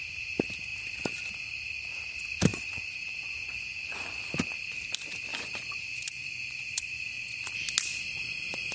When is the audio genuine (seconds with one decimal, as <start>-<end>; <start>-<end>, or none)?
0.0-2.5; 4.2-5.3; 7.5-8.7